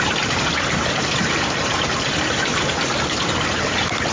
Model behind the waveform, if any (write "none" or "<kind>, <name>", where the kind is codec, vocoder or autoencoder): vocoder, BigVGAN v2